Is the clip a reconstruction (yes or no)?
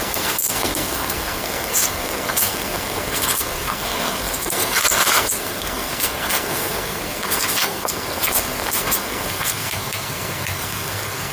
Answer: yes